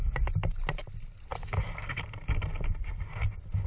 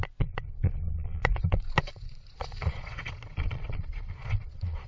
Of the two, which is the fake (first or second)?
second